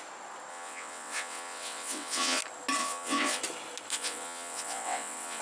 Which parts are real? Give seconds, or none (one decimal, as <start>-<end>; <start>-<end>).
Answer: 0.0-0.5; 2.4-2.8; 3.4-3.9